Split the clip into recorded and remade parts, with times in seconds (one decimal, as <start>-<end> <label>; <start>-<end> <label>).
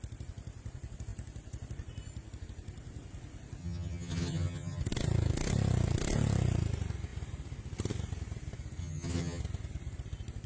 0.0-3.6 recorded; 3.6-4.8 remade; 4.8-8.8 recorded; 8.8-9.4 remade; 9.4-10.5 recorded